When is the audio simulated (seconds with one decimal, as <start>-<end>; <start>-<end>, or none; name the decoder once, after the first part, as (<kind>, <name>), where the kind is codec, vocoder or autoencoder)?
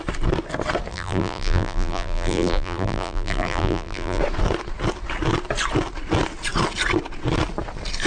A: 0.9-4.2 (vocoder, BigVGAN v2)